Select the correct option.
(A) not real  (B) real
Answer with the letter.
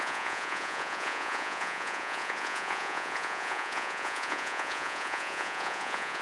A